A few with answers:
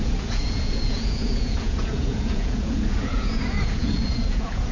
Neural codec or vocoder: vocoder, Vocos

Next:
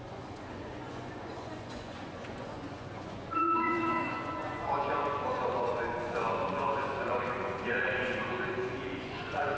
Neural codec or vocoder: vocoder, Vocos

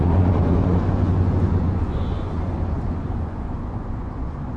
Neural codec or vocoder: vocoder, Vocos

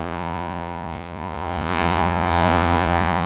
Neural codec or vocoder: vocoder, Vocos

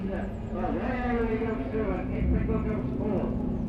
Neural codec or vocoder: vocoder, Vocos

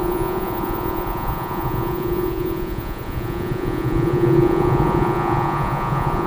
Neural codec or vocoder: vocoder, Vocos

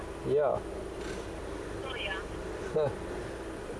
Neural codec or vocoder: none